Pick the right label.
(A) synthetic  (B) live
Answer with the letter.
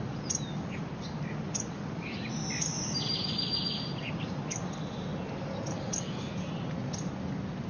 B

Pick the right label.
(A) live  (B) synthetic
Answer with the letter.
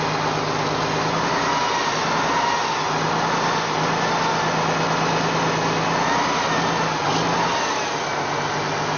A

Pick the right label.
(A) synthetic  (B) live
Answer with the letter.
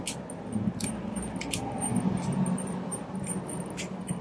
B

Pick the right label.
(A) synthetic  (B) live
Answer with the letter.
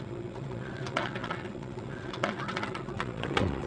A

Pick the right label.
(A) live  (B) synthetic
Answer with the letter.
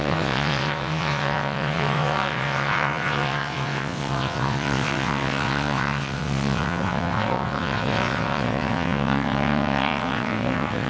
B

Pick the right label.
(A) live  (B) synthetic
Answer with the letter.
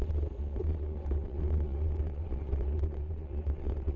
B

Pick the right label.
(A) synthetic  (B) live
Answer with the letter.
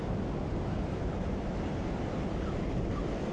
B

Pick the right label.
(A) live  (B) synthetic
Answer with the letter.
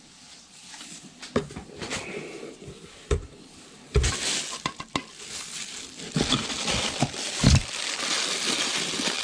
A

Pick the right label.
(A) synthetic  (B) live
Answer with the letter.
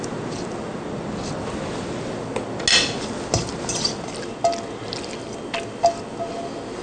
B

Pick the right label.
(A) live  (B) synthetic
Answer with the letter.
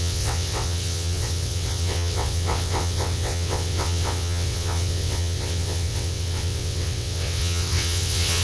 B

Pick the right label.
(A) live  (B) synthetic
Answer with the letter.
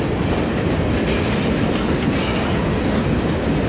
A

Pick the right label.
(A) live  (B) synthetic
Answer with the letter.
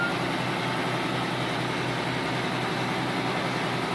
A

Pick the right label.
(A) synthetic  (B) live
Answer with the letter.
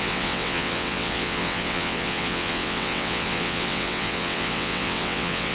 A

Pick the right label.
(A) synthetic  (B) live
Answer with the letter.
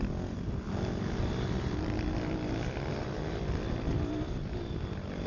B